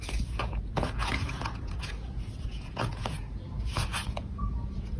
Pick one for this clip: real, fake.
fake